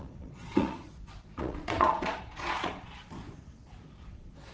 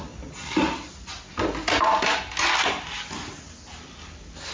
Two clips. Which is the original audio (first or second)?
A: second